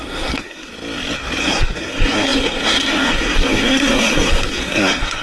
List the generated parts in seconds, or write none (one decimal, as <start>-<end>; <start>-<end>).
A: 0.0-0.7; 1.4-5.2